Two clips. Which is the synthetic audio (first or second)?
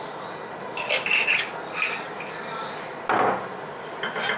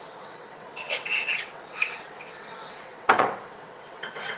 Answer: second